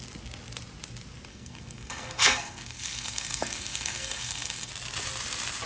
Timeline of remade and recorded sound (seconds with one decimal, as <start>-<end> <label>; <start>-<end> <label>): 0.0-1.3 recorded; 1.3-4.7 remade; 4.7-5.7 recorded

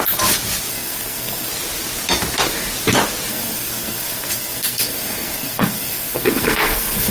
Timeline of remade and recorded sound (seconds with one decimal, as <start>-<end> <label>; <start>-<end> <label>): 0.0-0.7 recorded; 0.7-1.5 remade; 1.5-3.3 recorded; 3.3-7.1 remade